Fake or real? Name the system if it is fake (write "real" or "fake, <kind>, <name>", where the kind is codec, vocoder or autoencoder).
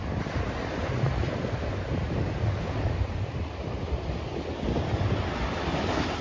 real